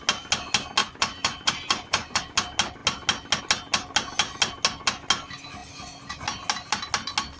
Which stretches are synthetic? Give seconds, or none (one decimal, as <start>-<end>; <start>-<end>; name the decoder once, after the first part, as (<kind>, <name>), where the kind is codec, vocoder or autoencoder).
0.8-2.2 (vocoder, Vocos)